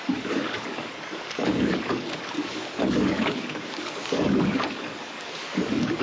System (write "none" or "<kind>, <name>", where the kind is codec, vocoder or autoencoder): codec, DAC